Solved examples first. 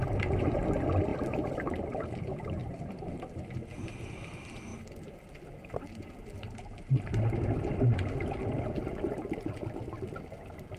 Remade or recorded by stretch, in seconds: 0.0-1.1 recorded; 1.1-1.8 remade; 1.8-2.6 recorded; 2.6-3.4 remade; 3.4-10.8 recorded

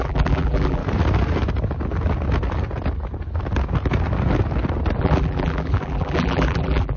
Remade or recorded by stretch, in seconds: 0.0-0.8 remade; 0.8-5.0 recorded; 5.0-7.0 remade

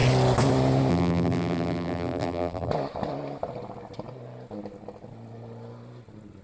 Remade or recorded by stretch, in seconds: 0.0-0.9 recorded; 0.9-2.7 remade; 2.7-6.4 recorded

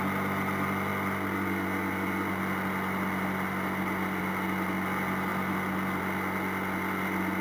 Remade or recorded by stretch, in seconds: 0.0-7.4 recorded